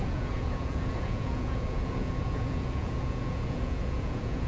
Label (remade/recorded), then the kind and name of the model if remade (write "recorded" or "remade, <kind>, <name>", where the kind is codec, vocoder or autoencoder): remade, vocoder, Vocos